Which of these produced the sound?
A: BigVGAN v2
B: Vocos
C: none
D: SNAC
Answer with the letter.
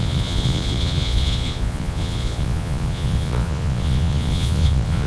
B